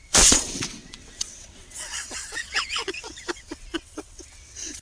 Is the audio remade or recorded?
remade